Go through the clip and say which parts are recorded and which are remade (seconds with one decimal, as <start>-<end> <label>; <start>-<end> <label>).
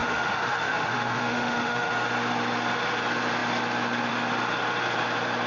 0.0-1.9 remade; 1.9-5.5 recorded